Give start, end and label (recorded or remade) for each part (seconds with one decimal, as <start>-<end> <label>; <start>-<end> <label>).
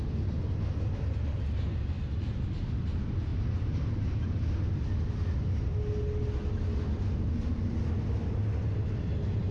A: 0.0-9.5 recorded